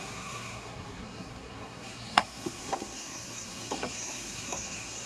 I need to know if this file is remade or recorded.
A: remade